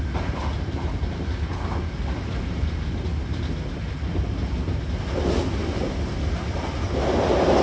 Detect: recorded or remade recorded